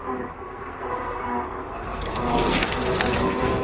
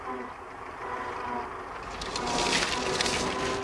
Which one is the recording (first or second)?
second